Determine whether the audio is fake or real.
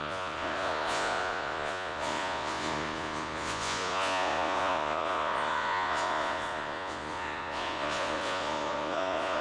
fake